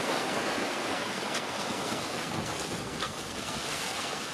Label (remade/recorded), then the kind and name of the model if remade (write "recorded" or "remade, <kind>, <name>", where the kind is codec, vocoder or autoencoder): remade, codec, SNAC